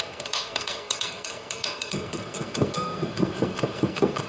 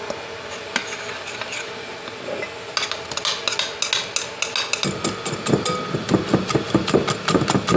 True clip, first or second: second